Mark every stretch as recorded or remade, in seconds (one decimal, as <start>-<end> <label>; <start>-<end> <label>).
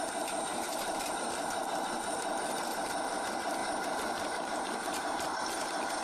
0.0-0.5 recorded; 0.5-1.6 remade; 1.6-3.6 recorded; 3.6-4.4 remade; 4.4-6.0 recorded